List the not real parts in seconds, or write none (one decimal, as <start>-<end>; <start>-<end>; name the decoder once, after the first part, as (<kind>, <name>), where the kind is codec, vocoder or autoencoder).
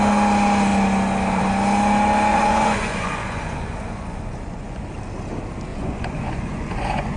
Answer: 2.3-4.8 (vocoder, Vocos); 5.7-7.2